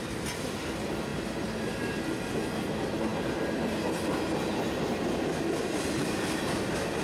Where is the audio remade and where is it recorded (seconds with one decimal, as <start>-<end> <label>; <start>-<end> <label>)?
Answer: 0.0-7.0 recorded